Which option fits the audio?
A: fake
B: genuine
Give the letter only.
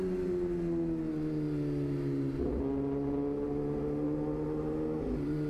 B